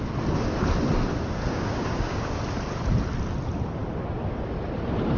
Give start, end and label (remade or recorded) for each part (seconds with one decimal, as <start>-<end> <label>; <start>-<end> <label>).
0.0-1.5 recorded; 1.5-2.4 remade; 2.4-5.2 recorded